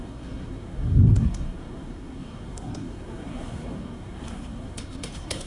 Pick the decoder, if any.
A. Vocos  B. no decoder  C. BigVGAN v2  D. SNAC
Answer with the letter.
D